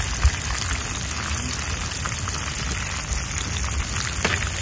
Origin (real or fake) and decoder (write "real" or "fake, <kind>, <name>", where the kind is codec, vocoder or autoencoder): real